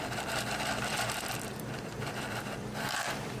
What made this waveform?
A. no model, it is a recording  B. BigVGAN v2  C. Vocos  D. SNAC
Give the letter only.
B